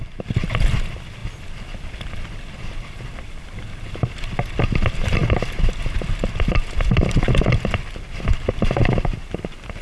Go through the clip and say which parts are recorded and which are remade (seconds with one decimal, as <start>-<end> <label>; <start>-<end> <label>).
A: 0.0-9.8 recorded